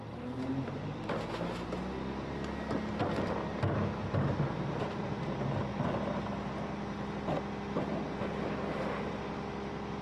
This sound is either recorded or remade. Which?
recorded